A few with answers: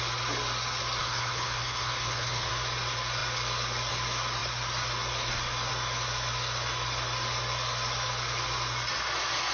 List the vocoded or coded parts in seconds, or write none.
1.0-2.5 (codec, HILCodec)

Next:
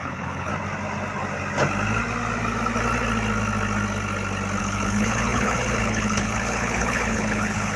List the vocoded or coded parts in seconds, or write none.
0.0-0.5 (codec, HILCodec); 4.6-7.8